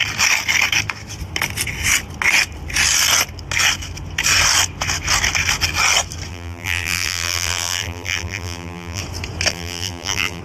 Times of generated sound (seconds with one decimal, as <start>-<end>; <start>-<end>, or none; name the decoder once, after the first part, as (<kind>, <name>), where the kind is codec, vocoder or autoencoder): 6.3-9.0 (vocoder, BigVGAN v2); 9.5-10.4